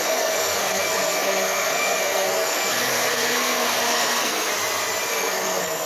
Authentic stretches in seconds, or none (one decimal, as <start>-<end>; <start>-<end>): 4.5-5.1